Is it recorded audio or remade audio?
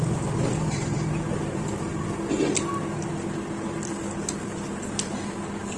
recorded